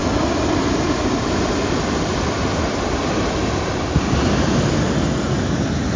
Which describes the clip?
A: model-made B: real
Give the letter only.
B